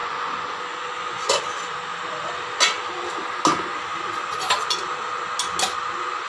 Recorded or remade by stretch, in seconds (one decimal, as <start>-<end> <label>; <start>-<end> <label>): 0.0-1.4 remade; 1.4-6.3 recorded